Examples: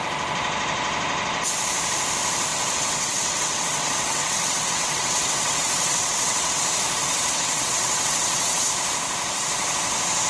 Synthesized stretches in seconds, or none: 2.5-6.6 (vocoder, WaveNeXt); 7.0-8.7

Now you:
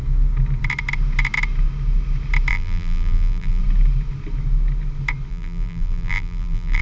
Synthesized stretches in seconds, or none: 2.5-3.6 (vocoder, BigVGAN v2); 5.3-6.8

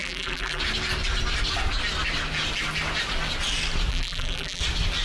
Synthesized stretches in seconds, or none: 0.0-0.6 (vocoder, BigVGAN v2); 3.9-4.6

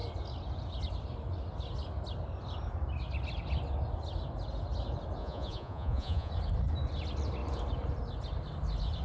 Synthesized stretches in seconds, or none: 5.2-6.3 (vocoder, Vocos)

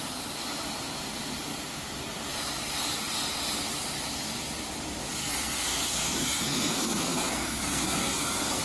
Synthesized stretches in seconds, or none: 5.2-8.6 (codec, SNAC)

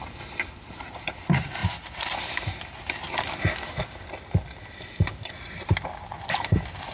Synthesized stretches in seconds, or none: none

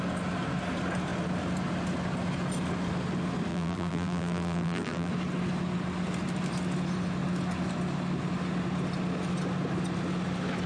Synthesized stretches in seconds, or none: 3.5-5.1 (vocoder, BigVGAN v2)